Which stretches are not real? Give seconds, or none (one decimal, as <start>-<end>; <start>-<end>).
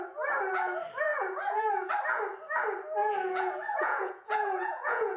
1.1-1.9; 3.0-5.2